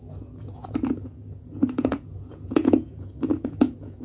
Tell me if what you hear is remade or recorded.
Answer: remade